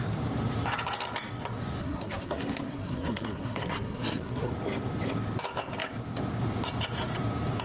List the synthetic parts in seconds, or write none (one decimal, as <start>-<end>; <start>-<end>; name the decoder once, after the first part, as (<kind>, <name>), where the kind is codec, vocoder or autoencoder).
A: 1.8-4.5 (codec, SNAC)